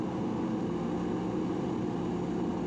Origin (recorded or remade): recorded